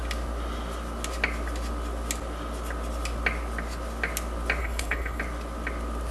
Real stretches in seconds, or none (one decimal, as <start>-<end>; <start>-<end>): 0.0-4.6; 5.2-6.1